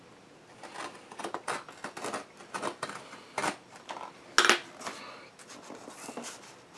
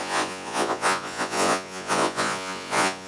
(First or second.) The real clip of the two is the first